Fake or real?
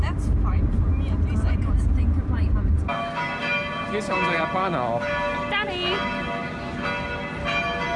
real